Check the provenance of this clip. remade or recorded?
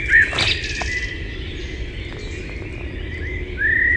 recorded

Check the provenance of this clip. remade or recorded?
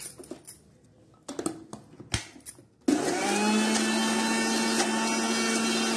recorded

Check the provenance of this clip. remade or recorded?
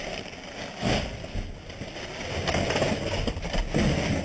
recorded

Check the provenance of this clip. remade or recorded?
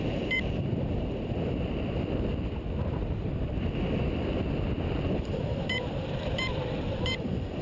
remade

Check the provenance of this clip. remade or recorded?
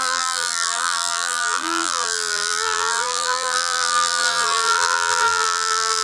remade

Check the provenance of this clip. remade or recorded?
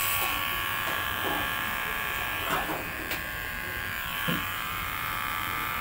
remade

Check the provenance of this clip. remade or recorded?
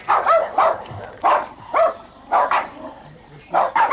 remade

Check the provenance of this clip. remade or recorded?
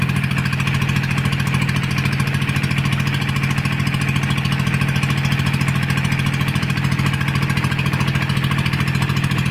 recorded